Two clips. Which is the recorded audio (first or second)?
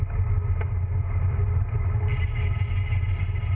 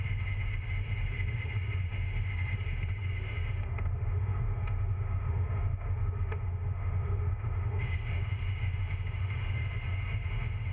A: first